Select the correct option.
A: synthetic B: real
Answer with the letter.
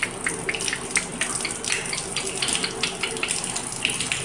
B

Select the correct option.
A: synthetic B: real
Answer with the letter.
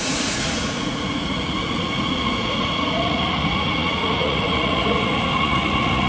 A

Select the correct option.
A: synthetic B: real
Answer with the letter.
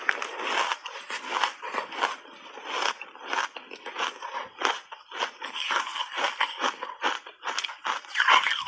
B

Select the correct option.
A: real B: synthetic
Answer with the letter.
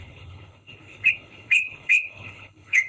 B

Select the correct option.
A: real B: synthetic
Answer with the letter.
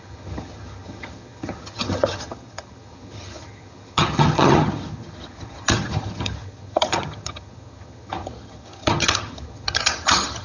B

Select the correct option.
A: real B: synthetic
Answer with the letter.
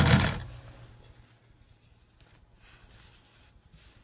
A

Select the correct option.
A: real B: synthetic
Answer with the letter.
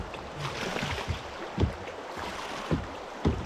A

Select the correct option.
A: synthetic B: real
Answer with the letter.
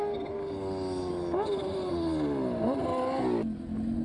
B